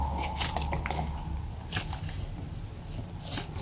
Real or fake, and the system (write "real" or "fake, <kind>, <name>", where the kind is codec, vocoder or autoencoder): real